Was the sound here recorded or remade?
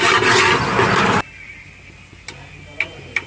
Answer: recorded